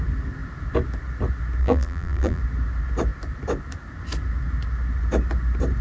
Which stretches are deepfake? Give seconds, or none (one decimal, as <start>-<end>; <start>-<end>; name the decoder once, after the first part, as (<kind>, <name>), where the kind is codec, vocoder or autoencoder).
1.6-2.4 (vocoder, BigVGAN v2)